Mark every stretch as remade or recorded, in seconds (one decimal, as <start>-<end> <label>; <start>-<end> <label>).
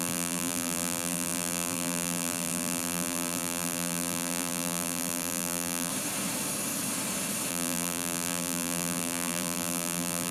0.0-5.9 remade; 5.9-7.5 recorded; 7.5-10.3 remade